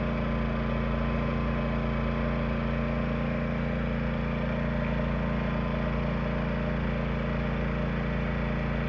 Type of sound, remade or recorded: recorded